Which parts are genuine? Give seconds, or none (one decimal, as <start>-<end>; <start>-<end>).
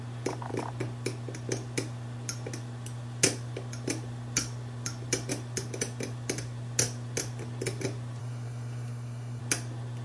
0.0-8.2; 9.4-10.0